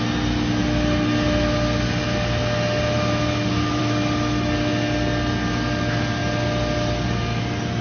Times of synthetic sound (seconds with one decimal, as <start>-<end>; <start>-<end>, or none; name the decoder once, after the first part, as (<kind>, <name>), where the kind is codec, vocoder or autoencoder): none

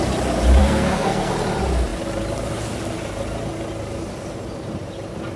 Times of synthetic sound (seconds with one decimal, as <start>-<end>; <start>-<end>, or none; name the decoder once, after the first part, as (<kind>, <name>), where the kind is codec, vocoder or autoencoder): 0.6-1.3 (codec, SNAC)

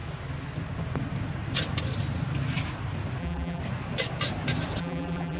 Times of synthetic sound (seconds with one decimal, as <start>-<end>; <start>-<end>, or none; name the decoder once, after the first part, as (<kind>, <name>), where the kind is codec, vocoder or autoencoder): 3.2-3.6 (vocoder, BigVGAN v2); 4.8-5.4

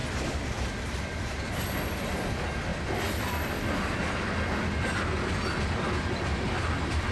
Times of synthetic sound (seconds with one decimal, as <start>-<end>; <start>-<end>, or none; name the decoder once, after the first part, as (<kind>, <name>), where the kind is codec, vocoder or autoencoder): 0.0-1.6 (vocoder, BigVGAN v2); 2.7-3.9

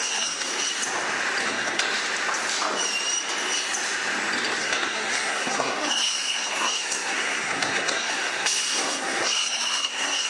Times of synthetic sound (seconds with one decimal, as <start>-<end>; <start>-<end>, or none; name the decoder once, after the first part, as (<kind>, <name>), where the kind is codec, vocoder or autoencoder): 0.0-0.5 (codec, SNAC); 1.4-1.8; 4.6-10.3